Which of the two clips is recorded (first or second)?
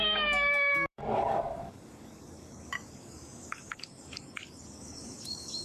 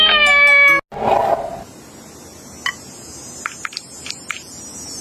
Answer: second